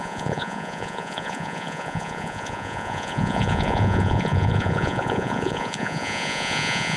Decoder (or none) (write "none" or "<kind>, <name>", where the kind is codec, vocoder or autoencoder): vocoder, Vocos